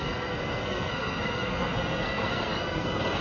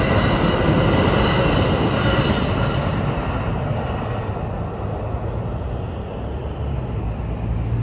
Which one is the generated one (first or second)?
first